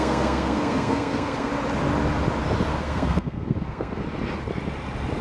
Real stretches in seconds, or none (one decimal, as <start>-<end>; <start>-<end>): 1.5-2.8; 4.0-5.2